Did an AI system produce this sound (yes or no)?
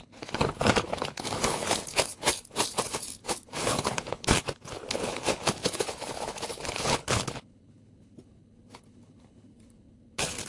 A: yes